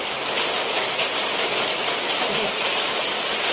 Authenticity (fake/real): fake